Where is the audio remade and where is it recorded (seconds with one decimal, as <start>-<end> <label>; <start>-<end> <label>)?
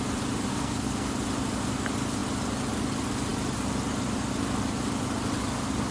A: 0.0-0.5 recorded; 0.5-1.1 remade; 1.1-5.9 recorded